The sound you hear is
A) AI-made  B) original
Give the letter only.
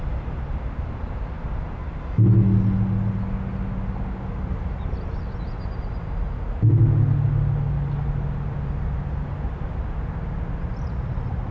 B